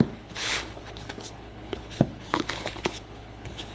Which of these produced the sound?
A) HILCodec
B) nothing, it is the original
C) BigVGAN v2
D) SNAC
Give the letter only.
A